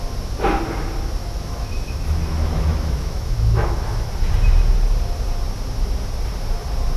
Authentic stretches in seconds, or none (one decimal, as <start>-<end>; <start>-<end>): 0.0-1.2; 4.1-7.0